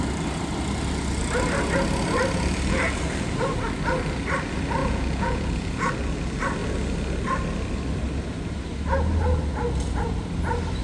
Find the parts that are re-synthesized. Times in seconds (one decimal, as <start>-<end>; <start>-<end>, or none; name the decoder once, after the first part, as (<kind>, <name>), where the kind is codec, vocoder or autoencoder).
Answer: 4.8-5.9 (vocoder, Vocos)